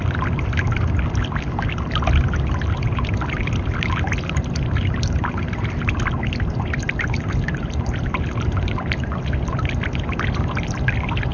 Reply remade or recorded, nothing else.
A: recorded